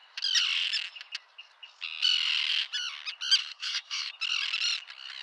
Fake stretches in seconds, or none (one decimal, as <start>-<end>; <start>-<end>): 3.4-4.1